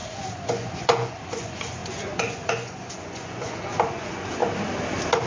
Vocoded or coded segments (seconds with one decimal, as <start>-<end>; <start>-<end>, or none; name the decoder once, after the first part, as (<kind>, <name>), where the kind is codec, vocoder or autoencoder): 0.0-4.4 (vocoder, Vocos)